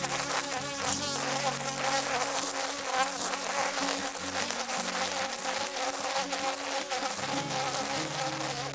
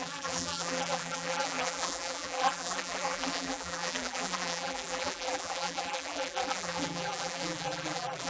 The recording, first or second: first